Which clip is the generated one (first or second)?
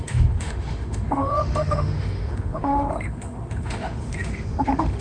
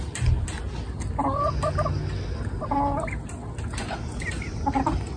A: first